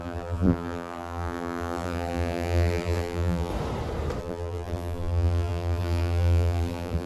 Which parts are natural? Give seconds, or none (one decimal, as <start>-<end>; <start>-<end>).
3.5-4.2